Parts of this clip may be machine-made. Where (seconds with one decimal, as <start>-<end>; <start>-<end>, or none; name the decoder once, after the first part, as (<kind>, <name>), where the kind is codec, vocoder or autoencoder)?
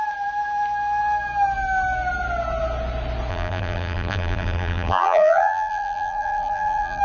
3.3-7.0 (vocoder, BigVGAN v2)